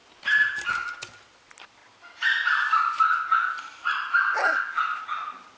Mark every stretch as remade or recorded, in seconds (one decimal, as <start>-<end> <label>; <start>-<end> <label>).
0.0-0.7 remade; 0.7-5.6 recorded